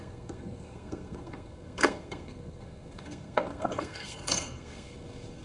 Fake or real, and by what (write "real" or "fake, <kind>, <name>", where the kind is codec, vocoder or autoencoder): fake, codec, SNAC